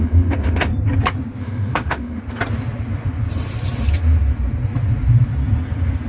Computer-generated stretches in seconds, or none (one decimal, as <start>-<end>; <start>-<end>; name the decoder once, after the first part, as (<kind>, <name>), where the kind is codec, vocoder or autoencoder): 0.0-0.7 (autoencoder, DAC-VAE); 1.4-2.2